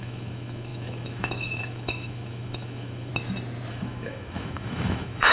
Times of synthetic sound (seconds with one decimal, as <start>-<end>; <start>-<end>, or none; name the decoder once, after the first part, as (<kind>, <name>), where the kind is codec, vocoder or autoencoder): 0.0-3.1 (autoencoder, DAC-VAE); 3.7-5.3